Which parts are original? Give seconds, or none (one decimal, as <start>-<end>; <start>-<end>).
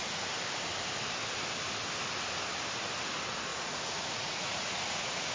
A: 0.0-3.5